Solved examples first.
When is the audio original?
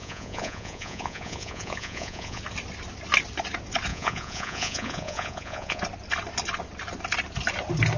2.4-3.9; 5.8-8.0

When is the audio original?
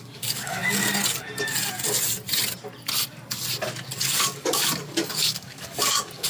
0.6-4.0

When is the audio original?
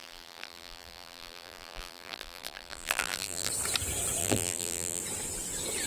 3.5-4.2; 5.0-5.9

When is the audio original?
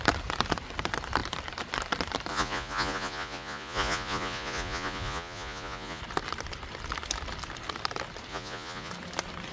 0.0-2.3; 6.0-8.3; 8.9-9.5